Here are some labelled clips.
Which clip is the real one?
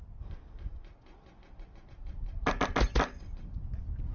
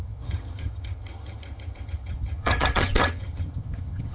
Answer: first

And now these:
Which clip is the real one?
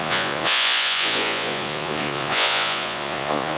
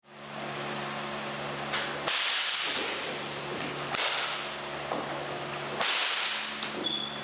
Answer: second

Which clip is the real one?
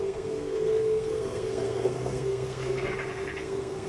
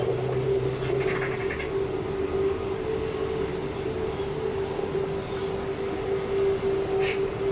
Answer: second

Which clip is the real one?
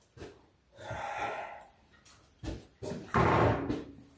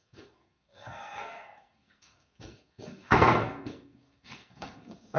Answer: first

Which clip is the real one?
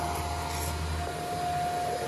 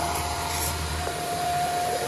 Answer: first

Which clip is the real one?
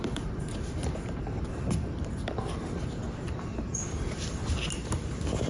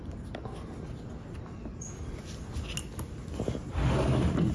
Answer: second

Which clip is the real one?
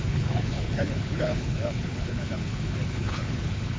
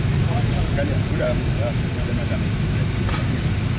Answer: second